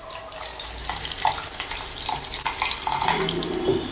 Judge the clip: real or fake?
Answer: real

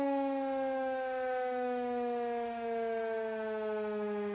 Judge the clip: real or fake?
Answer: fake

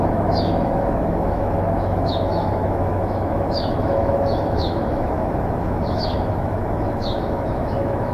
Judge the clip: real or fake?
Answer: fake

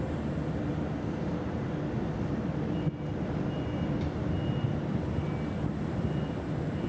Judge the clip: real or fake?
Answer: real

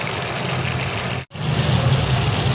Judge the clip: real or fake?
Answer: real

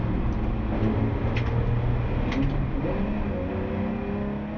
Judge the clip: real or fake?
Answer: real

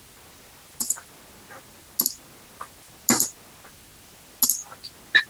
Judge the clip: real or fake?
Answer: real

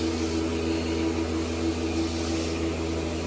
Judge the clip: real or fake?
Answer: real